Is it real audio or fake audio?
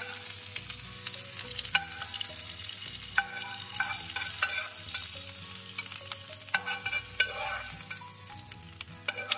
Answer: real